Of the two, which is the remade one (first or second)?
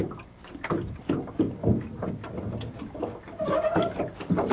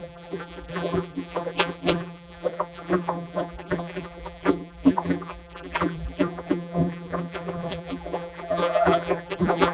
second